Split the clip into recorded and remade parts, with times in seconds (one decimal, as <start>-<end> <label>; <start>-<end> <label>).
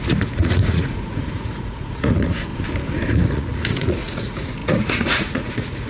0.0-2.5 remade; 2.5-3.1 recorded; 3.1-5.9 remade